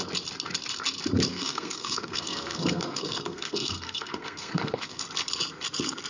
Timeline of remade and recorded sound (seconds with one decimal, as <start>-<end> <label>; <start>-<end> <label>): 0.0-1.3 recorded; 1.3-5.0 remade; 5.0-6.1 recorded